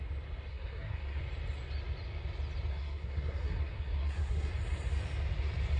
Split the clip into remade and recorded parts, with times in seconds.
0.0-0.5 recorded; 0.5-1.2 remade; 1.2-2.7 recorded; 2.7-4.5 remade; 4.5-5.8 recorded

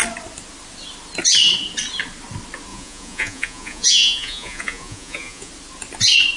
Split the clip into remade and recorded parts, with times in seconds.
0.0-2.7 recorded; 2.7-5.5 remade; 5.5-6.4 recorded

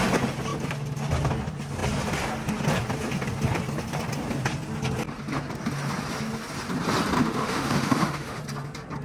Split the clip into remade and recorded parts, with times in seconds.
0.0-7.2 recorded; 7.2-8.4 remade; 8.4-9.0 recorded

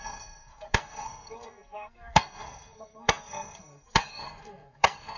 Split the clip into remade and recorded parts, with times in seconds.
0.0-5.2 remade